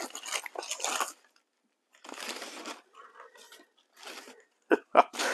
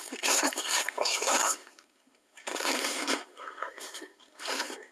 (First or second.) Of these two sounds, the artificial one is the second